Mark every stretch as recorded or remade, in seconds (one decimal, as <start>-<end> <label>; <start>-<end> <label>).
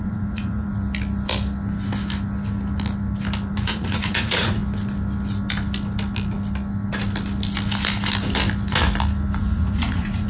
0.0-0.7 remade; 0.7-3.5 recorded; 3.5-4.6 remade; 4.6-9.4 recorded; 9.4-10.3 remade